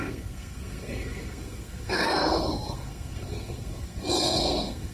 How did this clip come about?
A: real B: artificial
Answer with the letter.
B